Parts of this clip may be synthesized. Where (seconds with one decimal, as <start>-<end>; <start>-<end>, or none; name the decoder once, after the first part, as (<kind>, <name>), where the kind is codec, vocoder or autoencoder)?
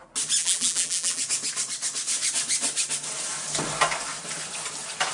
0.4-1.2 (vocoder, BigVGAN v2)